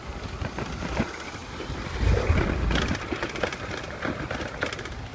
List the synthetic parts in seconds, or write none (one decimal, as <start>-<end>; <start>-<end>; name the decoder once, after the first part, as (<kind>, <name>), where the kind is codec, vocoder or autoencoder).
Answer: none